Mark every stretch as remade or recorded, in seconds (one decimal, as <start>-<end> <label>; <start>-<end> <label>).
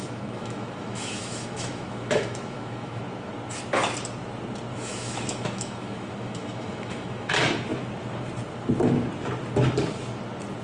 0.0-3.0 remade; 3.0-4.7 recorded; 4.7-7.3 remade; 7.3-10.6 recorded